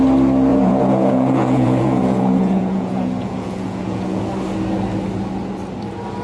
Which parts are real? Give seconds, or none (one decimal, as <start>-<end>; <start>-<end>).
0.0-0.5; 4.2-6.2